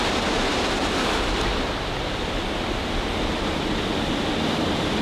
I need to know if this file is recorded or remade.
recorded